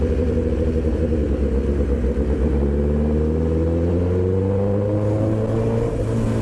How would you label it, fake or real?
real